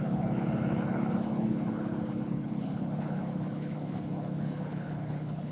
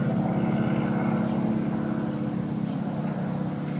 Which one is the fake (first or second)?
first